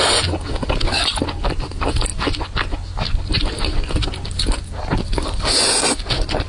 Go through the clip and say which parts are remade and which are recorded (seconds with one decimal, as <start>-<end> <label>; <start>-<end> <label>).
0.0-6.5 recorded